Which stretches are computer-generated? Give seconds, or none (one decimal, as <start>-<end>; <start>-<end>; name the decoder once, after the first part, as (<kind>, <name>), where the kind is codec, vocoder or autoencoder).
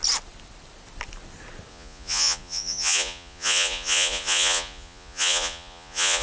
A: 1.7-6.2 (vocoder, Vocos)